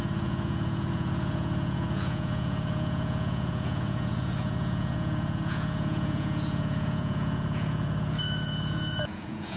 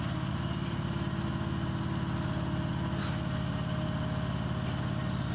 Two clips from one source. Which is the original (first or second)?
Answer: second